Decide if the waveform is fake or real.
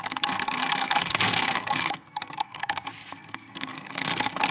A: fake